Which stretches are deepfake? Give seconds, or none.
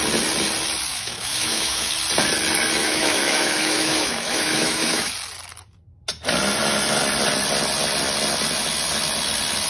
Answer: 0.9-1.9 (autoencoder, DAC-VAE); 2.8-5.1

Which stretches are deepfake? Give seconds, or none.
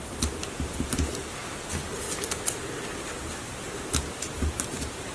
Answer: none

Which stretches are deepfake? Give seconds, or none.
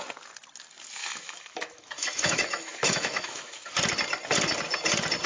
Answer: 1.0-3.7 (autoencoder, DAC-VAE)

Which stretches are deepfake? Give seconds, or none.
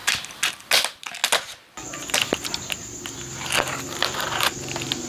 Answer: none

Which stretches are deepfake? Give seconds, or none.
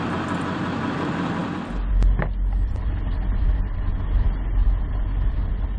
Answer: none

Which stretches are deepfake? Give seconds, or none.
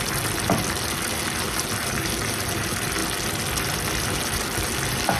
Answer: none